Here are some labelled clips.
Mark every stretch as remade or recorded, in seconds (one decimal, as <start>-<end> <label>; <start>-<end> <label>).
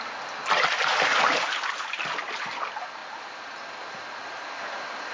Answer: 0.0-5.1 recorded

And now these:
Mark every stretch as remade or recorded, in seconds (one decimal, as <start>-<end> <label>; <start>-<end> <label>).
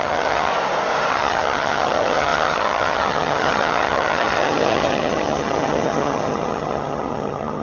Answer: 0.0-0.5 remade; 0.5-1.1 recorded; 1.1-7.6 remade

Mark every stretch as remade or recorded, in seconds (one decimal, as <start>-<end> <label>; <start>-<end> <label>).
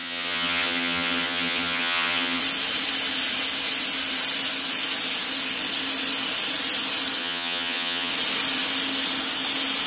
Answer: 0.0-2.4 remade; 2.4-7.2 recorded; 7.2-8.1 remade; 8.1-9.9 recorded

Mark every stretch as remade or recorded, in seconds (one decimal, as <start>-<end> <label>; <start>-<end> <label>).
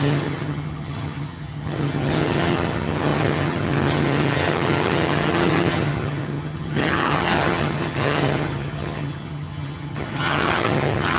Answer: 0.0-11.2 remade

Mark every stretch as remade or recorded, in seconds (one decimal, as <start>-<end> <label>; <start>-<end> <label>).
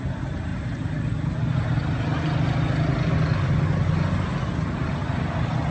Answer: 0.0-5.7 recorded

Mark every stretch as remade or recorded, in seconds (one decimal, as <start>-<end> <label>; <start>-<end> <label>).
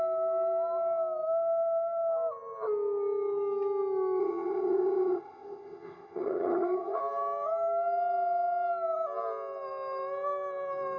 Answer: 0.0-4.2 recorded; 4.2-7.0 remade; 7.0-11.0 recorded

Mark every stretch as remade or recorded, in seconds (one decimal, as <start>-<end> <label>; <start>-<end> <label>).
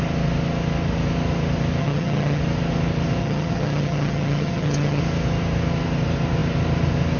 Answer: 0.0-1.8 recorded; 1.8-2.4 remade; 2.4-3.2 recorded; 3.2-5.0 remade; 5.0-7.2 recorded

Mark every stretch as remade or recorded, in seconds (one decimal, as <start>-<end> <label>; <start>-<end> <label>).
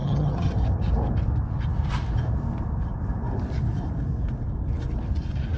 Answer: 0.0-0.5 remade; 0.5-5.6 recorded